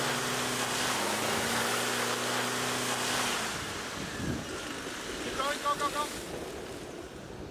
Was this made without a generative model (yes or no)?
yes